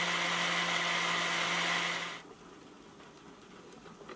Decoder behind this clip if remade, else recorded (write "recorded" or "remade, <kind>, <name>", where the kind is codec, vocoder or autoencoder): recorded